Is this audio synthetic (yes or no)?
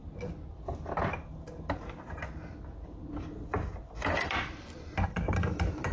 no